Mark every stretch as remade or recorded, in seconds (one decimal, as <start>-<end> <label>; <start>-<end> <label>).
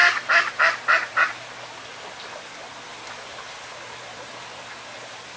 0.0-5.4 recorded